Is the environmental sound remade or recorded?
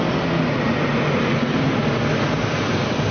recorded